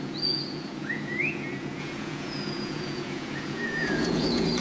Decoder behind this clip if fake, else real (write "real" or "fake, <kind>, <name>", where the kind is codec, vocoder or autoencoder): fake, vocoder, Vocos